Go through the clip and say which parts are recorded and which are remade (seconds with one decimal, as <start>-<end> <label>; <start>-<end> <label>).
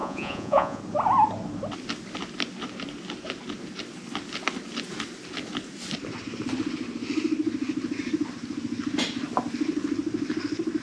0.0-0.8 remade; 0.8-10.8 recorded